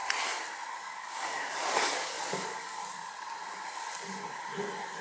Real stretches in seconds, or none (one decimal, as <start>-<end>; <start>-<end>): 0.0-0.8; 2.8-5.0